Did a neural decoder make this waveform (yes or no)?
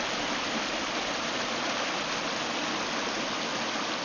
no